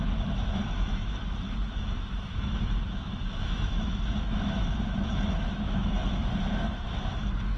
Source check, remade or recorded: remade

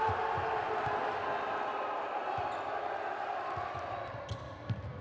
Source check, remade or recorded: recorded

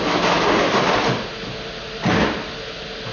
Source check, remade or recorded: recorded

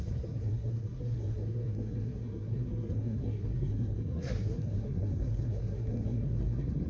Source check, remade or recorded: remade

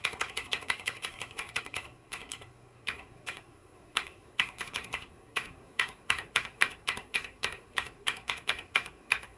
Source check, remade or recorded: remade